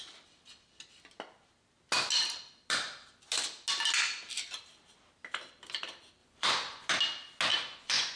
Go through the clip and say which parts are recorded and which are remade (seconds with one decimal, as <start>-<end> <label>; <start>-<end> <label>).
0.0-6.2 recorded; 6.2-6.9 remade; 6.9-7.5 recorded; 7.5-8.2 remade